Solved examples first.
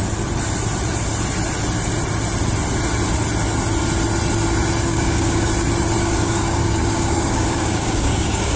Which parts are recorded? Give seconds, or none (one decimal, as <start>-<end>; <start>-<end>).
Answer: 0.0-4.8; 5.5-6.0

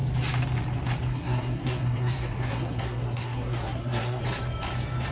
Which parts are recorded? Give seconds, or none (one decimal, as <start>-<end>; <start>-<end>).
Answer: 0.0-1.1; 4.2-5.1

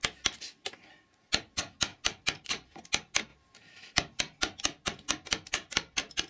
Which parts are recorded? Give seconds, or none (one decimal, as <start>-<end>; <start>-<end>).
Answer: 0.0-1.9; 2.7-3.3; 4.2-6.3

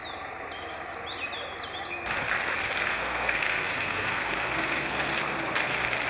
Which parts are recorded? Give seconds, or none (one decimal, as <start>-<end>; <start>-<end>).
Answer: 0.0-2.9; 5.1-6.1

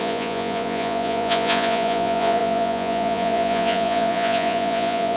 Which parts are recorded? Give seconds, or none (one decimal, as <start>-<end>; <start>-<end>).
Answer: none